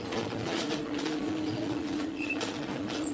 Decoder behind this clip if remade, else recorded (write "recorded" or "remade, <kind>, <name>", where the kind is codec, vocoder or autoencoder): remade, vocoder, Vocos